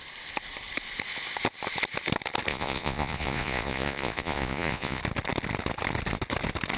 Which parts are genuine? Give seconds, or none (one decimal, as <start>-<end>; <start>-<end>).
0.0-2.5; 5.0-6.8